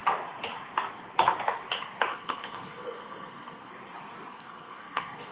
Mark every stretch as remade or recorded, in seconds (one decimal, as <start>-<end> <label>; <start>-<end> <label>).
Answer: 0.0-2.1 recorded; 2.1-3.7 remade; 3.7-4.3 recorded; 4.3-5.3 remade